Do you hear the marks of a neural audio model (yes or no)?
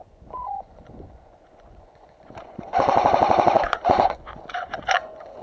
yes